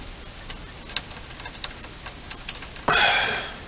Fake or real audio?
real